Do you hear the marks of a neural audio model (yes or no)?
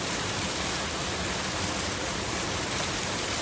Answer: no